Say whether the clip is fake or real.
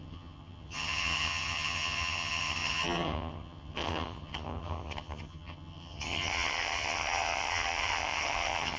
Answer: fake